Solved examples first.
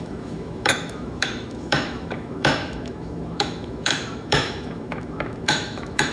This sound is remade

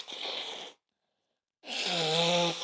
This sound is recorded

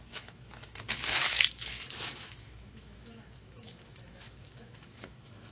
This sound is remade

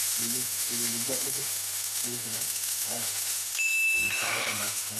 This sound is remade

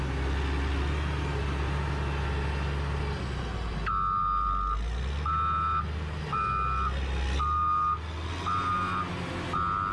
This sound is recorded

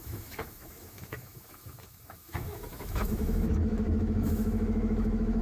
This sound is remade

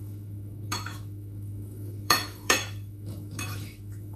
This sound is remade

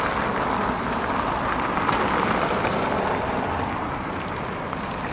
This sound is recorded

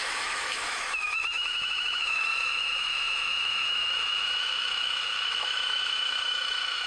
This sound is remade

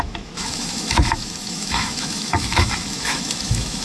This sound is remade